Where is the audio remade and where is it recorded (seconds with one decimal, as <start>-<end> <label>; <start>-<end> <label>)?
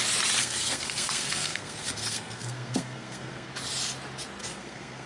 0.0-0.4 recorded; 0.4-3.5 remade; 3.5-4.4 recorded; 4.4-5.1 remade